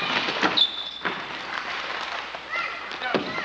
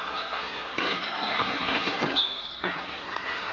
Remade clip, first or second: second